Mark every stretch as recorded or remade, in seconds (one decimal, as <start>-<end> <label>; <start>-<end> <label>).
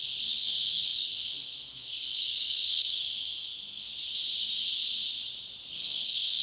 0.0-3.9 remade; 3.9-5.7 recorded; 5.7-6.4 remade